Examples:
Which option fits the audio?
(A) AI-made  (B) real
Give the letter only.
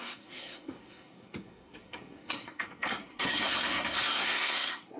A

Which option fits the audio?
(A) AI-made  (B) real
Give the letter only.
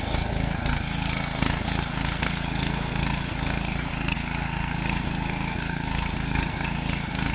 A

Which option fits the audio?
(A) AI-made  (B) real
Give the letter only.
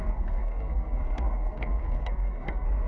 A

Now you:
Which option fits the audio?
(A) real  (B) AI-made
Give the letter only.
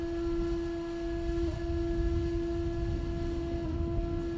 A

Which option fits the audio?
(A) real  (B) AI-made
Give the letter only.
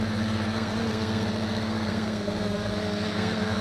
B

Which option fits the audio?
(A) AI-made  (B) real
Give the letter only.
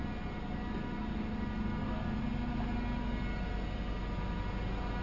B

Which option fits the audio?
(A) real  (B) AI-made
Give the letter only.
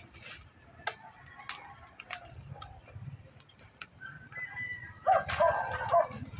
A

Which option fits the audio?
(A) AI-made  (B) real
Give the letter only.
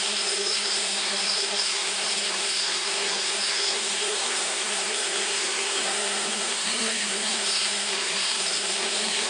A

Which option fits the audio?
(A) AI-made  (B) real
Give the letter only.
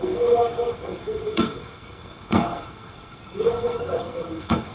A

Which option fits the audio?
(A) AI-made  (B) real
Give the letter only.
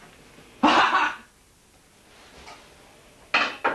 B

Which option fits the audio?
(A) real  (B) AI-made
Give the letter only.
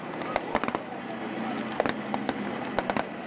A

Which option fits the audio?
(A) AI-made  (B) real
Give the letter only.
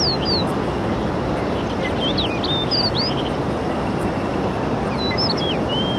B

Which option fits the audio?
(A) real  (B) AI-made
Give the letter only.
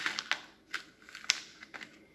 A